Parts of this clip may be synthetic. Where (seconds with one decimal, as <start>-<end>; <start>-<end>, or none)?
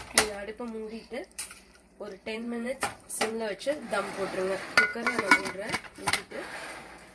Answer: 1.1-3.3; 4.9-6.1